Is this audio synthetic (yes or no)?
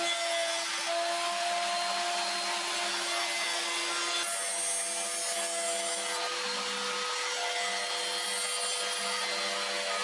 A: no